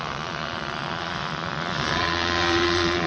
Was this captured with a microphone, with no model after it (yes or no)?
no